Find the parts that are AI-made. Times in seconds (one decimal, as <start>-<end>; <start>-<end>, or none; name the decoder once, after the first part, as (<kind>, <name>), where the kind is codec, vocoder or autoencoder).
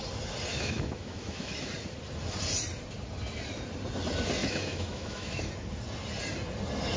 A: 0.5-1.7 (autoencoder, DAC-VAE); 4.4-5.5